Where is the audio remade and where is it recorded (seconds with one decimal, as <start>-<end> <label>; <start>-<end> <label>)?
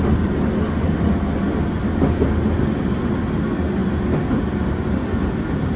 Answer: 0.0-5.8 recorded